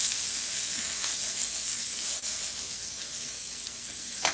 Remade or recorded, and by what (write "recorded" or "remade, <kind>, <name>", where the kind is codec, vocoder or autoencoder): remade, codec, SNAC